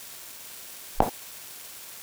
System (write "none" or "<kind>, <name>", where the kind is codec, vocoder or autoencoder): none